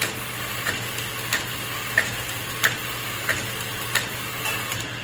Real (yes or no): yes